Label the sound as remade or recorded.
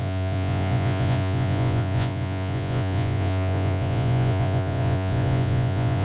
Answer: remade